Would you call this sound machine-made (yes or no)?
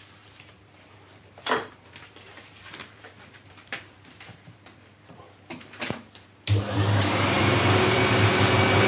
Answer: yes